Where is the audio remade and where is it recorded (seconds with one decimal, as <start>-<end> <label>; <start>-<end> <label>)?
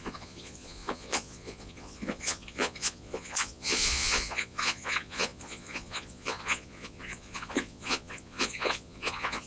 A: 0.0-9.5 remade